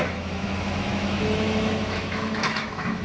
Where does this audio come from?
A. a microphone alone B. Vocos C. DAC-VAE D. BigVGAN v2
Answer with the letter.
C